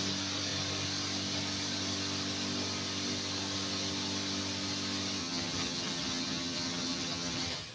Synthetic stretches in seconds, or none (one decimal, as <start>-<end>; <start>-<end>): 5.2-7.7